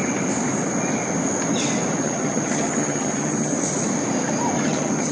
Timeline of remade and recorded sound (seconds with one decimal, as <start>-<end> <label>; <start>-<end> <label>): 0.0-2.0 recorded; 2.0-3.5 remade; 3.5-4.6 recorded; 4.6-5.1 remade